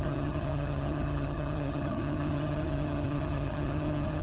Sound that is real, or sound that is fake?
fake